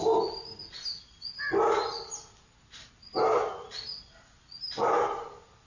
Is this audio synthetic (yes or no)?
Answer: no